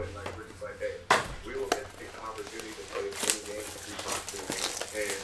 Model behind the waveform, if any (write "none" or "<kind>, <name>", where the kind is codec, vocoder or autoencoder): none